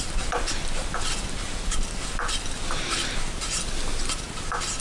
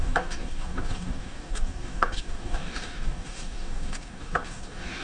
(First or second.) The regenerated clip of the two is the second